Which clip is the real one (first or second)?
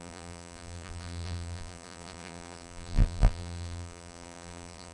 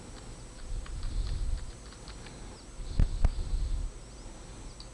second